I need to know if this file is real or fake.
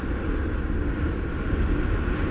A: real